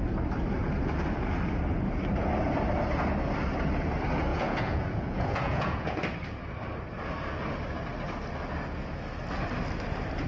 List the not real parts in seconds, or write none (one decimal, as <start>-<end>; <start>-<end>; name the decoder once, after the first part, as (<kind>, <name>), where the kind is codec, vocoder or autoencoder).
4.3-6.0 (vocoder, Vocos)